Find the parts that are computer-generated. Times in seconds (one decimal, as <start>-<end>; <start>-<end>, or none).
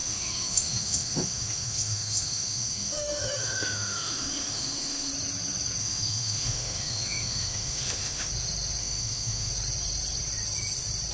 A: 0.0-5.1; 5.8-8.3; 8.8-9.5